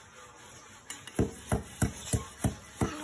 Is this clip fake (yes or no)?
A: no